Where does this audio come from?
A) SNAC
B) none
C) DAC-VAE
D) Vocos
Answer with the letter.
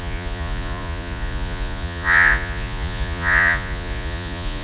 D